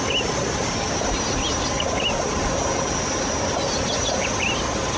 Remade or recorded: recorded